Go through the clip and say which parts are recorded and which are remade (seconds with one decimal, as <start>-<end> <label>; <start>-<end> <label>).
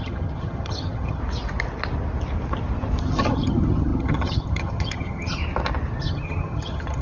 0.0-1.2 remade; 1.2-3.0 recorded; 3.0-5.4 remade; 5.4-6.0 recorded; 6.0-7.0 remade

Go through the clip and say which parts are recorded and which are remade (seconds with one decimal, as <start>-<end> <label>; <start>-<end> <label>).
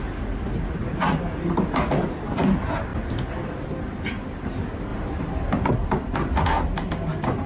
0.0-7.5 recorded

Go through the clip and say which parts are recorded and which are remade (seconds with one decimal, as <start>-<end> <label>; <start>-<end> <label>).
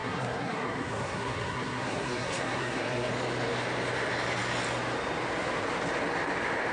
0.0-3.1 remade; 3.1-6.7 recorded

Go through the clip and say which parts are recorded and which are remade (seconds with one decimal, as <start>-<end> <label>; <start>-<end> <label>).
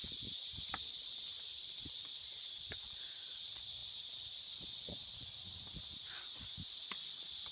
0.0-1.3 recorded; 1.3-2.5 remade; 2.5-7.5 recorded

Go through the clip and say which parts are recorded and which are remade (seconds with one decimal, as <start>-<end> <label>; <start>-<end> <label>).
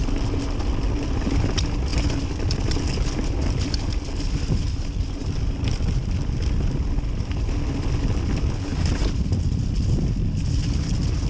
0.0-11.3 recorded